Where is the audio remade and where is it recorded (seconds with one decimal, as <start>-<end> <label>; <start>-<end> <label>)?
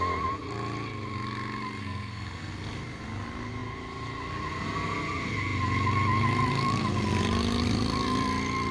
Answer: 0.0-1.8 recorded; 1.8-2.5 remade; 2.5-8.7 recorded